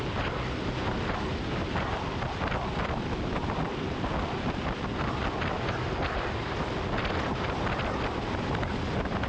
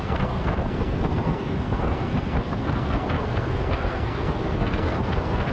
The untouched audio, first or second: first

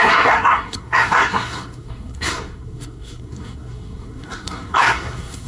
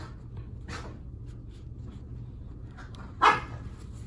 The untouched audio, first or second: second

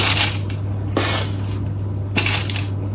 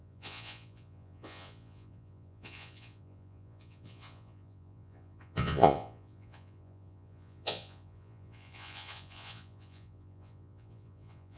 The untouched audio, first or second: first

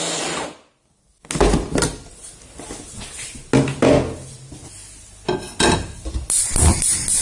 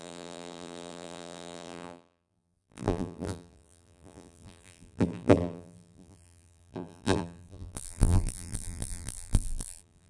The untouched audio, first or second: first